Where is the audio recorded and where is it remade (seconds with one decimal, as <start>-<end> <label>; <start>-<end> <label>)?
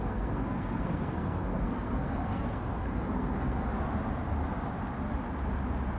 0.0-3.7 remade; 3.7-6.0 recorded